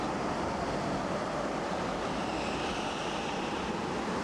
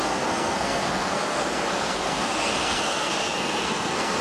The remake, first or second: second